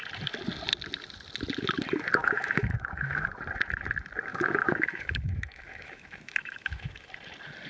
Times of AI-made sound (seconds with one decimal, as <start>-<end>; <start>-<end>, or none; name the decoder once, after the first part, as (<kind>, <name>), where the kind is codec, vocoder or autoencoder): 2.2-3.4 (autoencoder, DAC-VAE); 4.3-7.1